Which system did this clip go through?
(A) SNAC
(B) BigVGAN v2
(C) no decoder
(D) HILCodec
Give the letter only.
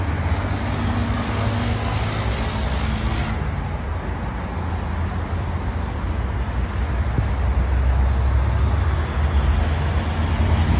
C